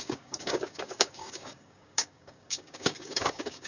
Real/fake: fake